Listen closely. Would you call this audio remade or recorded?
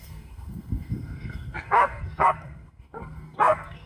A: remade